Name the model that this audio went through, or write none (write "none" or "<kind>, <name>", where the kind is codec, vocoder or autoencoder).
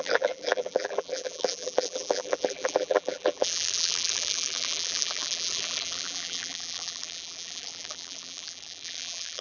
vocoder, BigVGAN v2